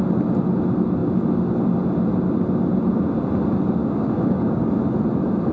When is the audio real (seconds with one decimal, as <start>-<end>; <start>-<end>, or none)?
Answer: 0.0-3.8; 4.7-5.5